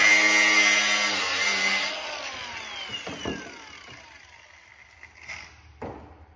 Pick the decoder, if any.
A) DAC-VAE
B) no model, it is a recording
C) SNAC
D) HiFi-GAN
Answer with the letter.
B